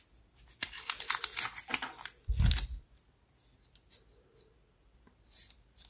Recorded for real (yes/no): yes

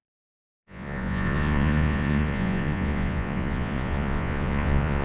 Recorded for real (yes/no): no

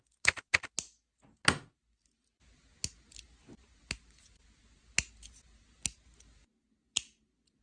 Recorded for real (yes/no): yes